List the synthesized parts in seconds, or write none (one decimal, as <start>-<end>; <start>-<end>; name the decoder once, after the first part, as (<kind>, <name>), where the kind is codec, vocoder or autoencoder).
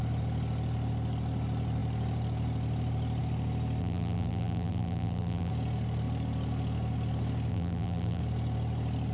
3.8-5.5 (vocoder, BigVGAN v2); 7.5-8.2